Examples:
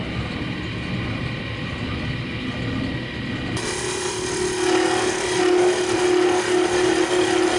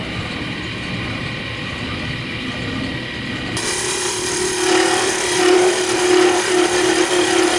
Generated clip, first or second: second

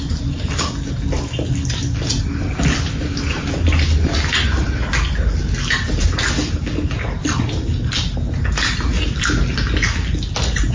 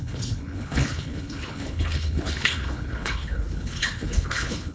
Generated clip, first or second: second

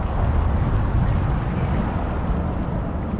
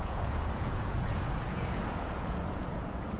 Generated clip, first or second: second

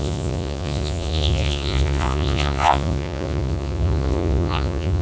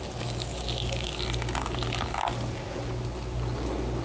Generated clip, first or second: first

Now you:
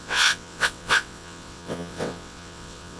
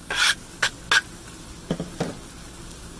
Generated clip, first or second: first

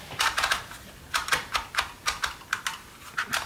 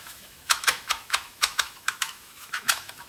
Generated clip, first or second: second